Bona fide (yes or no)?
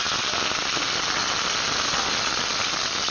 yes